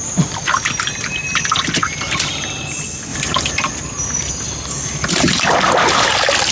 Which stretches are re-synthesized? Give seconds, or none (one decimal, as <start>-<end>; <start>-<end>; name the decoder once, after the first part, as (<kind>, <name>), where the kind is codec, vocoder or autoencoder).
none